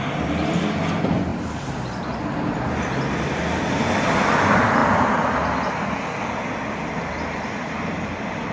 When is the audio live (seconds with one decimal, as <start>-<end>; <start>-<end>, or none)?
0.0-8.5